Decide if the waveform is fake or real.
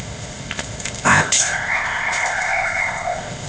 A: fake